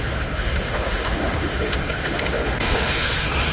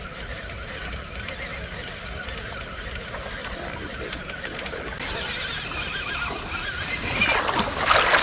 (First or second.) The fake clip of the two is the first